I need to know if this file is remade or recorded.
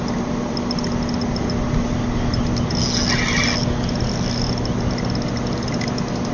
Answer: recorded